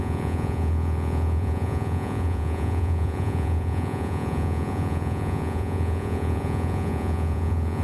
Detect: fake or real fake